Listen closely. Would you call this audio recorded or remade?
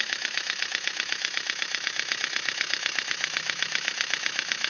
remade